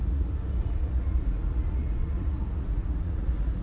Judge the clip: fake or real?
fake